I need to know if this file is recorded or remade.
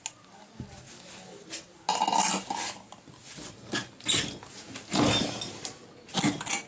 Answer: recorded